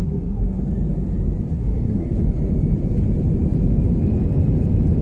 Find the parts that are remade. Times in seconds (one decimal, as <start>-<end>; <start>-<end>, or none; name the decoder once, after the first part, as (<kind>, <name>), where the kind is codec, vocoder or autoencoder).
0.0-0.6 (codec, SNAC); 1.5-2.2